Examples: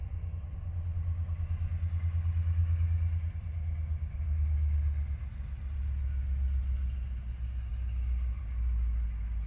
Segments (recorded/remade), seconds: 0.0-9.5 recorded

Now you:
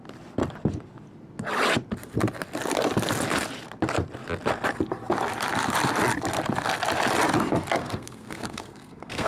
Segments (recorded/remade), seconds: 0.0-7.8 recorded; 7.8-9.3 remade

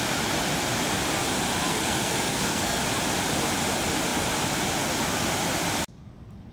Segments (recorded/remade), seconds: 0.0-1.7 recorded; 1.7-2.8 remade; 2.8-6.5 recorded

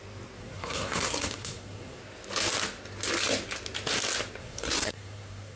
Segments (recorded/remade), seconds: 0.0-0.4 recorded; 0.4-2.0 remade; 2.0-4.4 recorded; 4.4-5.6 remade

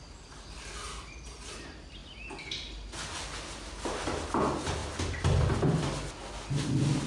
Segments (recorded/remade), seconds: 0.0-7.1 recorded

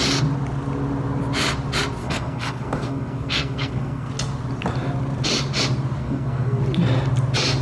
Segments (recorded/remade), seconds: 0.0-2.0 recorded; 2.0-4.1 remade; 4.1-6.0 recorded; 6.0-6.6 remade; 6.6-7.6 recorded